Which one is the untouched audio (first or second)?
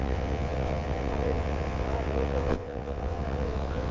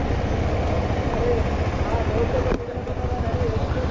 second